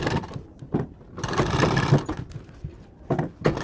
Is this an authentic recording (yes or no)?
yes